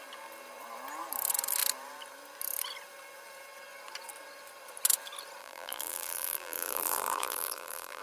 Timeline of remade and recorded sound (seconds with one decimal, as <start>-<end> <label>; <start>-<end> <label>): 0.0-5.4 recorded; 5.4-8.0 remade